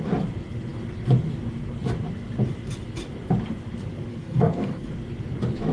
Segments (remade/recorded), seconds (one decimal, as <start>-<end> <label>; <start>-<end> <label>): 0.0-4.1 recorded; 4.1-4.9 remade; 4.9-5.7 recorded